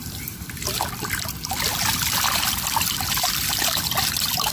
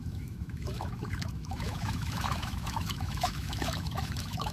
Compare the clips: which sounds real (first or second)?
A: first